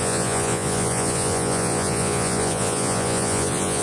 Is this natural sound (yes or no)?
no